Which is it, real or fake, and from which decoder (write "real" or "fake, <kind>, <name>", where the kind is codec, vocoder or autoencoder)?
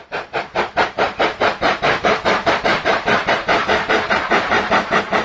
fake, vocoder, BigVGAN v2